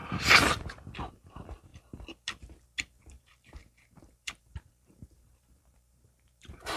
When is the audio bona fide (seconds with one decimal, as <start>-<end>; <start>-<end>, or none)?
0.0-1.1; 1.7-3.2